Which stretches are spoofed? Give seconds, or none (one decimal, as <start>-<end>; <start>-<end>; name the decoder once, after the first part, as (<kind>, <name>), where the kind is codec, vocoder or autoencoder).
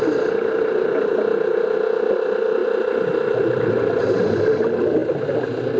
none